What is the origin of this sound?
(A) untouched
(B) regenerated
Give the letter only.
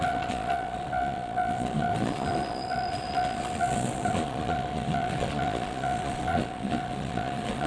B